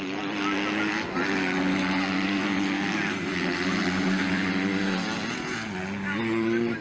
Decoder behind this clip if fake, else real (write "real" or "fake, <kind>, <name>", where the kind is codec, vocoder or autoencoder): real